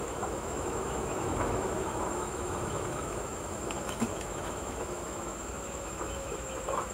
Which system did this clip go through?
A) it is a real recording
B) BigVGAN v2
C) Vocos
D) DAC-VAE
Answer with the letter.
D